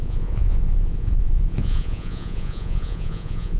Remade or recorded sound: remade